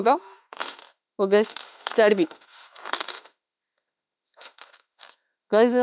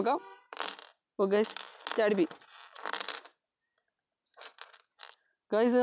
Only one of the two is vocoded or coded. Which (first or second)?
first